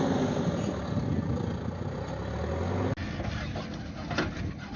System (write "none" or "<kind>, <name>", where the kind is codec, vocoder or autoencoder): none